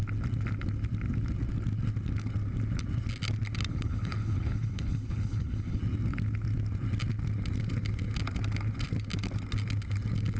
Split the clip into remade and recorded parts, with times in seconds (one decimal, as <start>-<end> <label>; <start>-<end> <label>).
0.0-3.7 recorded; 3.7-5.8 remade; 5.8-10.4 recorded

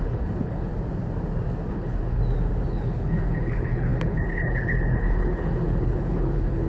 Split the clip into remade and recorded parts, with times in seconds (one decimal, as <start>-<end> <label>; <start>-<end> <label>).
0.0-0.7 remade; 0.7-1.7 recorded; 1.7-2.2 remade; 2.2-2.7 recorded; 2.7-6.7 remade

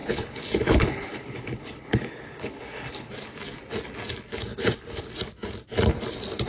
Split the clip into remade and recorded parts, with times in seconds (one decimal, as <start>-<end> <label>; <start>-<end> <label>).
0.0-3.1 remade; 3.1-4.5 recorded; 4.5-5.0 remade; 5.0-6.5 recorded

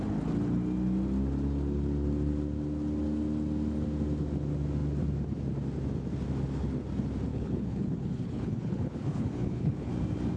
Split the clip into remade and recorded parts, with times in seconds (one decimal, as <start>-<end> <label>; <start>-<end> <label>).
0.0-7.3 recorded; 7.3-9.9 remade; 9.9-10.4 recorded

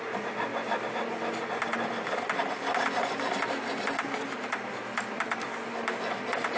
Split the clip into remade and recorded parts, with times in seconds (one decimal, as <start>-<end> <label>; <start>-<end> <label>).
0.0-6.6 recorded

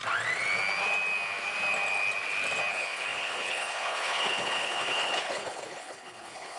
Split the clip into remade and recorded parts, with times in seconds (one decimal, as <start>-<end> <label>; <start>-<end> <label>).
0.0-2.7 recorded; 2.7-6.6 remade

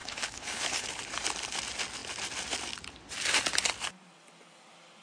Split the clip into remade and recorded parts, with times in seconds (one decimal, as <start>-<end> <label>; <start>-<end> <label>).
0.0-1.0 remade; 1.0-5.0 recorded

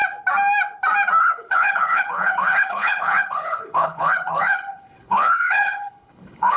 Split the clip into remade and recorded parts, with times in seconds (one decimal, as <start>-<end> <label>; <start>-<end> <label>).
0.0-1.2 recorded; 1.2-6.6 remade